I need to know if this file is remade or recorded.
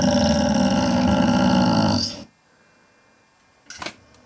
recorded